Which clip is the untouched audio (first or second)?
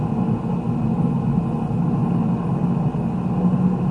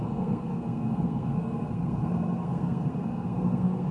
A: first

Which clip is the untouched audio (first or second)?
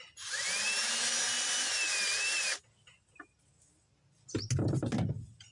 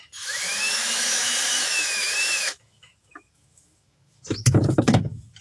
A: first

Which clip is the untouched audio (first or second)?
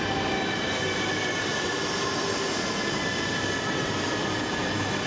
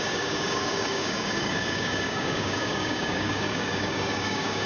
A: first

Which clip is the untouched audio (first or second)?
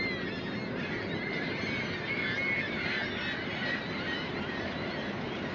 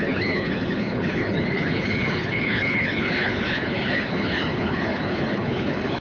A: first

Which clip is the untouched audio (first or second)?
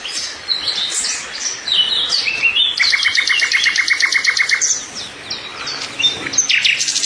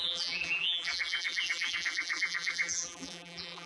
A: first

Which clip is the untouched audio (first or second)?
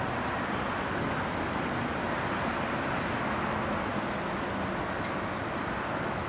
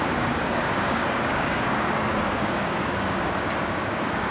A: first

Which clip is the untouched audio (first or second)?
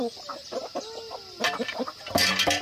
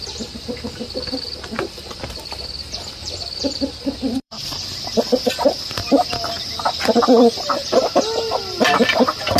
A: first